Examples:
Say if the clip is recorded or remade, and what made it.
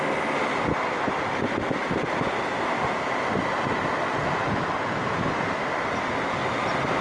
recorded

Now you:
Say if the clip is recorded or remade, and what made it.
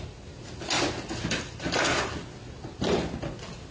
recorded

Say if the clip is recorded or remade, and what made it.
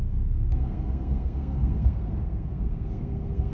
remade, codec, SNAC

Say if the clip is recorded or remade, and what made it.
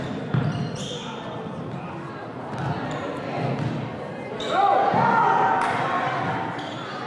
recorded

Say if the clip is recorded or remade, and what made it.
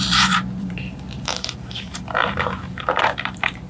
remade, vocoder, BigVGAN v2